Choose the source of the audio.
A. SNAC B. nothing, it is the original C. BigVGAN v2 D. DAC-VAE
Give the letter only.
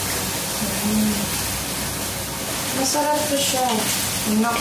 B